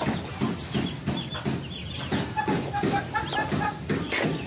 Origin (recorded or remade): recorded